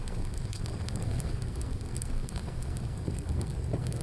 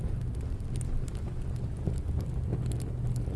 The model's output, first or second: first